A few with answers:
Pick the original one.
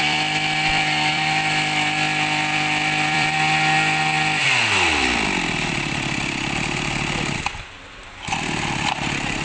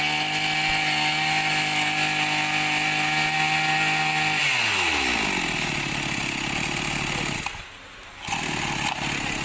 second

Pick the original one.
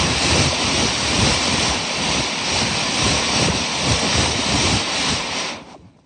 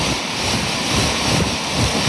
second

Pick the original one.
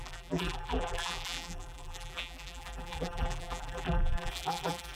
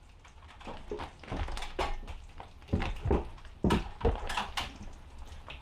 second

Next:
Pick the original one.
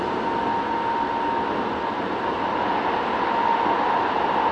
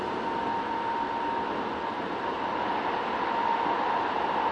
first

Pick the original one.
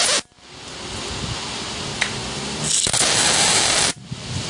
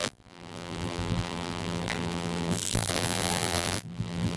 first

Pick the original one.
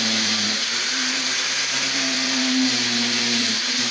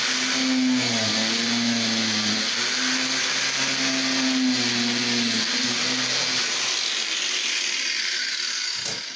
second